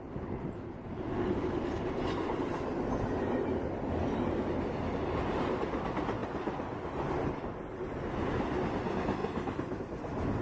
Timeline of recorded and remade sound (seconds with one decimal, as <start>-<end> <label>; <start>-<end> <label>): 0.0-10.4 recorded

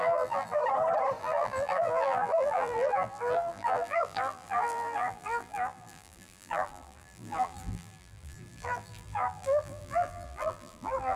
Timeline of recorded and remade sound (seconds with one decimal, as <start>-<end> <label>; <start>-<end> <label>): 0.0-0.6 remade; 0.6-1.2 recorded; 1.2-11.2 remade

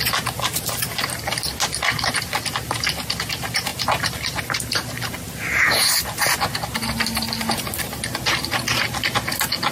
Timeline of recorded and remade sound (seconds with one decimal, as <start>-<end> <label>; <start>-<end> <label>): 0.0-9.7 recorded

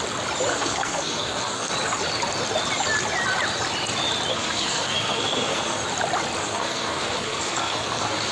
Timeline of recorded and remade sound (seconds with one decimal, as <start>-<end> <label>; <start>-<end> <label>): 0.0-0.5 recorded; 0.5-1.7 remade; 1.7-4.3 recorded; 4.3-5.8 remade; 5.8-6.4 recorded; 6.4-8.3 remade

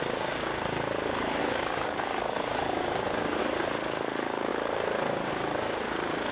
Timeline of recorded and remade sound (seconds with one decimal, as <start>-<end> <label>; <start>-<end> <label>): 0.0-1.4 recorded; 1.4-3.4 remade; 3.4-6.3 recorded